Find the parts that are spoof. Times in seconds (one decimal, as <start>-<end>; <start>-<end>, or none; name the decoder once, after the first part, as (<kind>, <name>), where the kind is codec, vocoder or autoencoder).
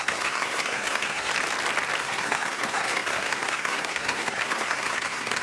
0.0-1.3 (codec, SNAC); 2.0-5.4